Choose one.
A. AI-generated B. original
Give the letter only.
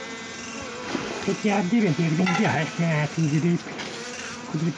B